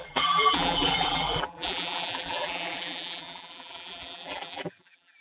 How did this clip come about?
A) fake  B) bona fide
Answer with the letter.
A